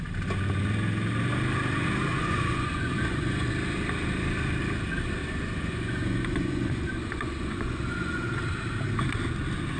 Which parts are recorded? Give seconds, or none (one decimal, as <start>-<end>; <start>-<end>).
0.0-2.1; 3.5-5.2; 8.4-9.8